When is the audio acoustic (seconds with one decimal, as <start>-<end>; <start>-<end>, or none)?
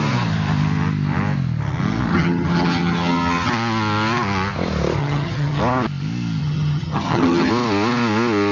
0.0-2.1; 3.5-5.0; 5.6-6.4; 7.5-8.5